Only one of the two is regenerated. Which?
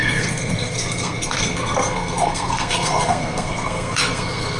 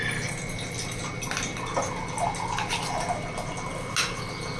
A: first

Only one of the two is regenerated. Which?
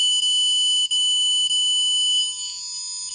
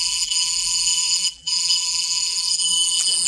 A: second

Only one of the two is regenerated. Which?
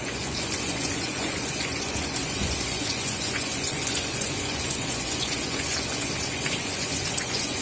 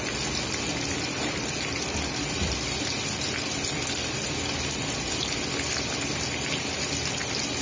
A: first